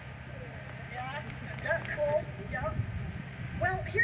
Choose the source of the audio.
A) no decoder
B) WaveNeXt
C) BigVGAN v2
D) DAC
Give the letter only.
C